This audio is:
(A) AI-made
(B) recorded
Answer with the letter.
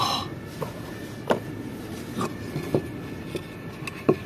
B